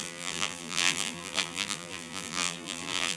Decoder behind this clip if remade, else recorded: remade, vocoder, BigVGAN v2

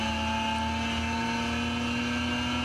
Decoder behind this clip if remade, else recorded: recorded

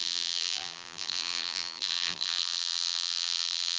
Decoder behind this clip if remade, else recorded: remade, vocoder, BigVGAN v2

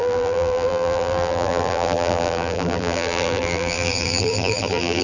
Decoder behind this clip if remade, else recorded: remade, vocoder, BigVGAN v2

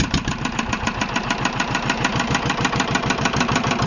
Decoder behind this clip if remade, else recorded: remade, vocoder, BigVGAN v2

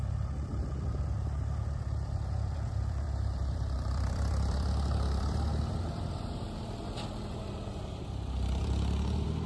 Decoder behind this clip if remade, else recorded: remade, vocoder, BigVGAN v2